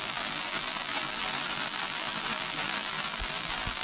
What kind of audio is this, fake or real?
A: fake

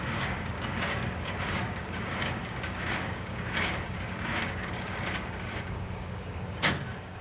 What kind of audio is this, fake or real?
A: fake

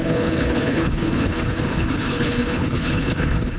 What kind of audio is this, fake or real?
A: fake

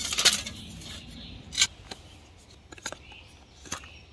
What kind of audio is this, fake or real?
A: real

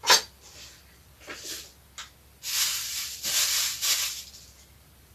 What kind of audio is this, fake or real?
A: real